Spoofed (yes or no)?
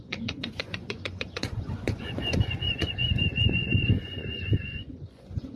yes